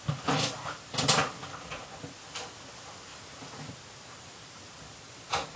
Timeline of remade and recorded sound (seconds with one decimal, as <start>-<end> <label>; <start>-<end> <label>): 0.0-5.6 recorded

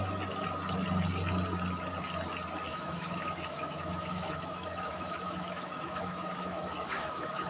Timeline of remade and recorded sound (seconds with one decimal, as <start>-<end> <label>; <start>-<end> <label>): 0.0-2.7 recorded; 2.7-7.5 remade

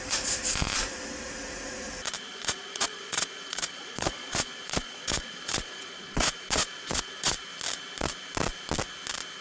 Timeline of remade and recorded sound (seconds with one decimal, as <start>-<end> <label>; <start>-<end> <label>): 0.0-2.3 recorded; 2.3-7.4 remade; 7.4-9.4 recorded

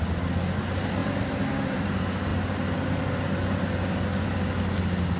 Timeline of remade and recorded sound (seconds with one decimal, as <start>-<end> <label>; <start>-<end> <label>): 0.0-1.0 recorded; 1.0-1.8 remade; 1.8-5.2 recorded

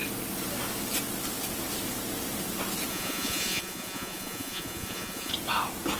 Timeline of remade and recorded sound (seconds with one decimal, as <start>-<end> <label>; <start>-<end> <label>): 0.0-2.9 recorded; 2.9-5.3 remade; 5.3-6.0 recorded